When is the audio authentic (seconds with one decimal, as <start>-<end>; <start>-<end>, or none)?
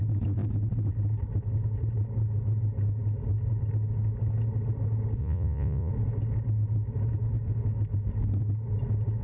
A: 0.0-5.2; 5.9-9.2